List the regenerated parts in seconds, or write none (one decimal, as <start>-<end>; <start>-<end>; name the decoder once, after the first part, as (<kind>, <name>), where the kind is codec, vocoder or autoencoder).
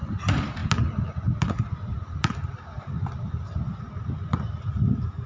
none